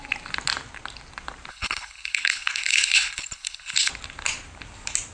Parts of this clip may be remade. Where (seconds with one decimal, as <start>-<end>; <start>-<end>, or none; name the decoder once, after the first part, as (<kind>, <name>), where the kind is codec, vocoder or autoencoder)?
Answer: 1.5-3.9 (codec, HILCodec)